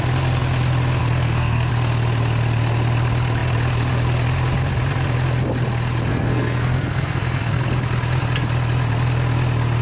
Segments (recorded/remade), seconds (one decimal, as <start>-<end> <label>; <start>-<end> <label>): 0.0-1.0 recorded; 1.0-1.7 remade; 1.7-6.1 recorded; 6.1-7.7 remade; 7.7-9.8 recorded